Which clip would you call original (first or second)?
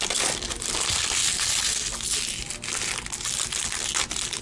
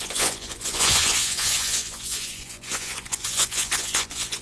first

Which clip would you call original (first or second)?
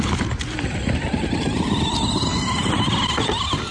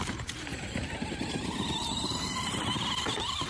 first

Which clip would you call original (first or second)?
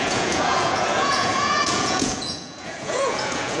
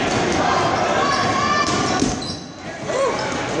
second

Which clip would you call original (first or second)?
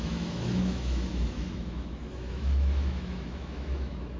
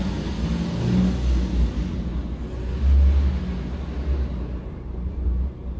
second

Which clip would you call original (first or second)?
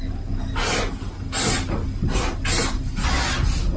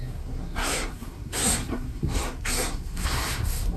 first